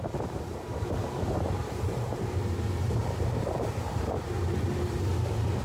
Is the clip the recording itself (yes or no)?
no